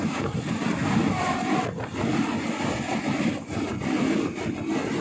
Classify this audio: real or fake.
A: real